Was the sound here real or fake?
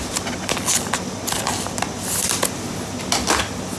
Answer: real